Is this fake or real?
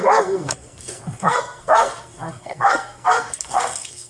fake